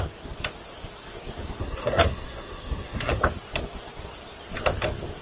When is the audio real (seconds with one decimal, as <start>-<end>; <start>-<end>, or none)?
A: 0.0-1.6; 3.2-5.2